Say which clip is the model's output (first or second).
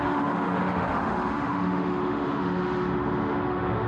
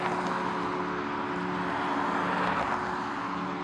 first